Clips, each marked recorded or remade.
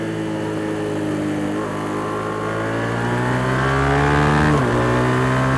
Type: recorded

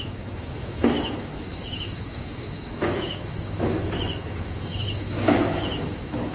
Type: remade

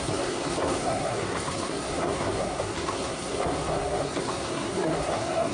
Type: remade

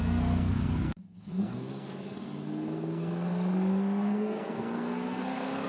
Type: remade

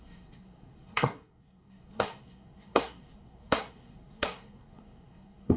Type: remade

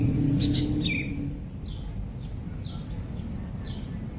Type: recorded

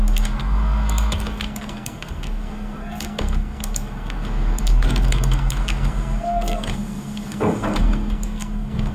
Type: remade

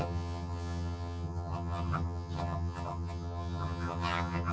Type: remade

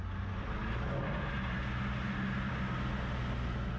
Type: recorded